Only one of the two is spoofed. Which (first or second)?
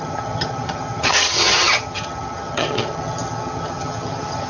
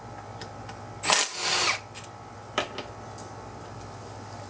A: first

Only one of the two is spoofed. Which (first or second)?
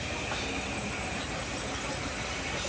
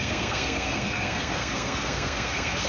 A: second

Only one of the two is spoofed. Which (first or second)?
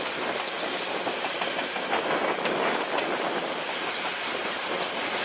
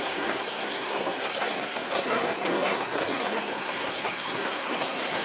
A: second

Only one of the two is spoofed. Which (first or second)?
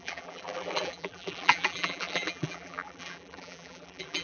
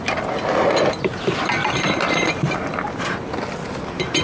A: first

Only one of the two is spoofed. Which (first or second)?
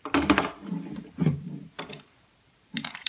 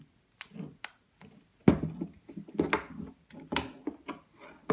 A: first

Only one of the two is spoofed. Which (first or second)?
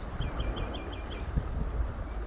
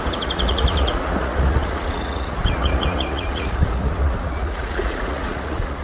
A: second